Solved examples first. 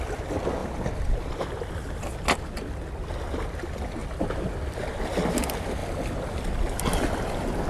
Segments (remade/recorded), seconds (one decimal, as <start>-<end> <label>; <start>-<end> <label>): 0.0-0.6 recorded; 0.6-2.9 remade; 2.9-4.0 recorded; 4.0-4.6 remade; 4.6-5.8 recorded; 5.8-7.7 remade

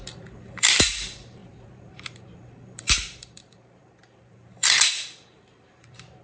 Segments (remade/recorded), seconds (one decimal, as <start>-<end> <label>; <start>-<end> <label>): 0.0-6.2 remade

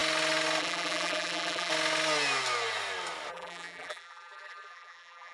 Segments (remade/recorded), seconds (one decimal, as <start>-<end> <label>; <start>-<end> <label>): 0.0-0.6 recorded; 0.6-1.7 remade; 1.7-3.3 recorded; 3.3-5.3 remade

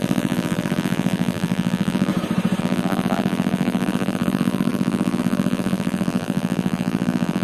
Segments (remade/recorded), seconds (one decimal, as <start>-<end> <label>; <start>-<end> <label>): 0.0-2.1 remade; 2.1-2.6 recorded; 2.6-7.4 remade

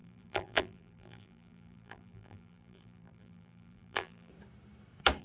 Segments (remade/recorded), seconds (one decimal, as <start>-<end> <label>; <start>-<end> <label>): 0.0-4.3 remade; 4.3-5.2 recorded